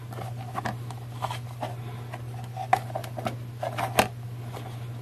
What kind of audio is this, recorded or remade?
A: recorded